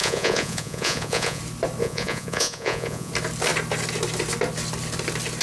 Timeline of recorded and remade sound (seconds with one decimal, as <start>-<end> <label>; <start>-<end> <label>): 0.0-1.4 remade; 1.4-1.8 recorded; 1.8-3.1 remade; 3.1-5.4 recorded